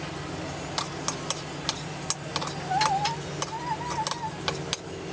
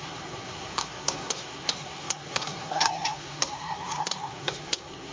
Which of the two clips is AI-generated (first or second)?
second